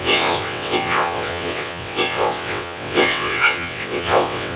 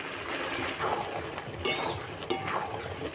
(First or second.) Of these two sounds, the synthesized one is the first